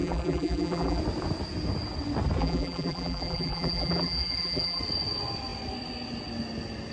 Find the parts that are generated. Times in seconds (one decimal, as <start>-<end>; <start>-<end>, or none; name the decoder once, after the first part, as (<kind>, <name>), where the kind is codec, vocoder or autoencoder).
0.0-1.0 (vocoder, BigVGAN v2); 2.4-4.8